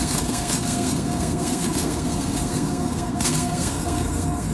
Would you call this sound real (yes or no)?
no